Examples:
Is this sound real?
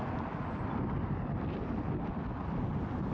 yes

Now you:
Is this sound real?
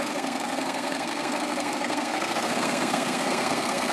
no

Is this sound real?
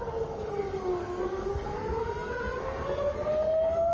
no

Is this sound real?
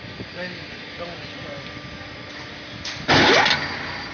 yes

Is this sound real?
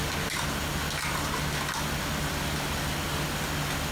yes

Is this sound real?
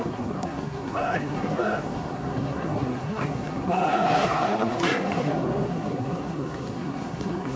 no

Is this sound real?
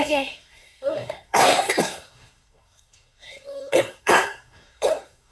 no